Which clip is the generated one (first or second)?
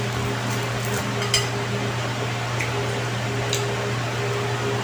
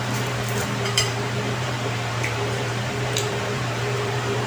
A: second